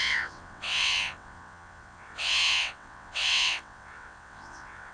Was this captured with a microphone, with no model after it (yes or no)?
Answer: no